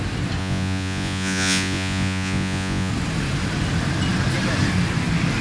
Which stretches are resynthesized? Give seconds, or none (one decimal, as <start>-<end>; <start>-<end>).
0.4-2.9